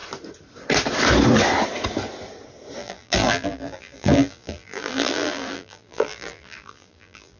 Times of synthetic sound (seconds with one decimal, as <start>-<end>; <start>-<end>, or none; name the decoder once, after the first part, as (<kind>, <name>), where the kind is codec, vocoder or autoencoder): 2.8-7.4 (vocoder, BigVGAN v2)